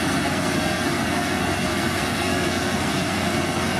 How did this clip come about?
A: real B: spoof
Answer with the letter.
B